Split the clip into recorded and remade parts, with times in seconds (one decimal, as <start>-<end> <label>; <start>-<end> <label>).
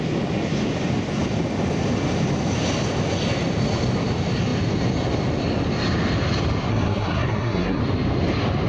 0.0-6.7 recorded; 6.7-7.8 remade; 7.8-8.7 recorded